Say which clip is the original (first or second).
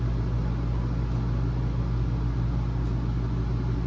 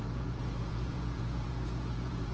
first